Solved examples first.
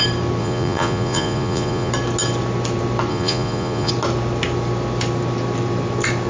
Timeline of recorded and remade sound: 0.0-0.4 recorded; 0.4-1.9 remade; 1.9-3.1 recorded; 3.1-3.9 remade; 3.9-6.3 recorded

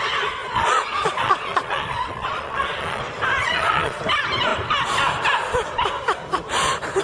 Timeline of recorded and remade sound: 0.0-0.4 recorded; 0.4-3.0 remade; 3.0-3.4 recorded; 3.4-4.0 remade; 4.0-7.0 recorded

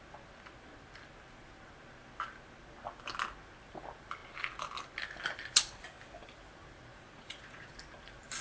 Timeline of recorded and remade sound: 0.0-6.9 recorded; 6.9-7.7 remade; 7.7-8.4 recorded

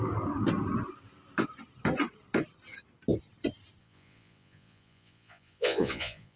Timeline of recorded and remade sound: 0.0-3.8 recorded; 3.8-6.4 remade

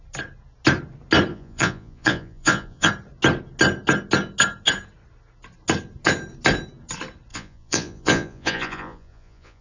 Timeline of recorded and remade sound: 0.0-1.3 recorded; 1.3-2.9 remade; 2.9-7.3 recorded; 7.3-9.6 remade

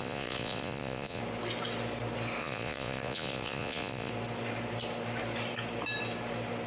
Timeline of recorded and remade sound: 0.0-1.2 remade; 1.2-2.4 recorded; 2.4-4.1 remade; 4.1-6.7 recorded

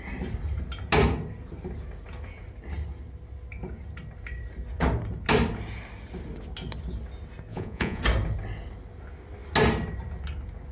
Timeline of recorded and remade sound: 0.0-7.5 recorded; 7.5-8.0 remade; 8.0-10.7 recorded